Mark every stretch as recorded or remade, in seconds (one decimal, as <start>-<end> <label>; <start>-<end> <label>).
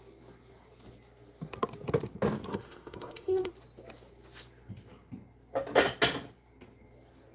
0.0-2.5 recorded; 2.5-3.5 remade; 3.5-7.3 recorded